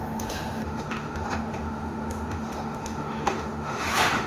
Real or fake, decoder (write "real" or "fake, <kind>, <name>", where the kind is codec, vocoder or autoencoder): fake, autoencoder, DAC-VAE